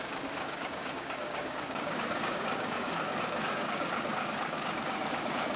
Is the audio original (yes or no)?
no